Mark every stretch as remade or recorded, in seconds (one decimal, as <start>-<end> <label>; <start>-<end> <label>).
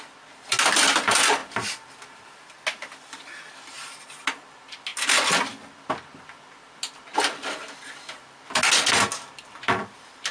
0.0-10.3 recorded